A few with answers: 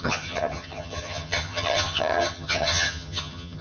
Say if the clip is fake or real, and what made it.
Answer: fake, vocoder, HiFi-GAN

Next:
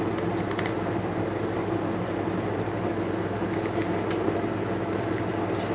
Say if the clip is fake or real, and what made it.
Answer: real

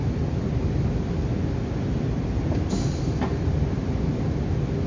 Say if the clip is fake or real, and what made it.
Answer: real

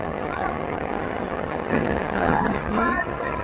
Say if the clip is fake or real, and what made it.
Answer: fake, vocoder, HiFi-GAN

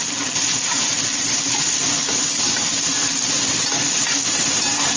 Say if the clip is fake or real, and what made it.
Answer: real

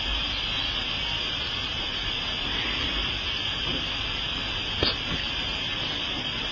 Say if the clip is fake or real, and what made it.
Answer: real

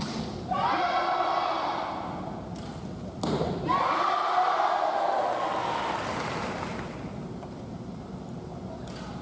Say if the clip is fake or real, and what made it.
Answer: real